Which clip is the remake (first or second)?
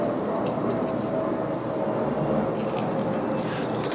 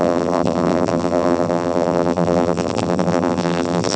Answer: second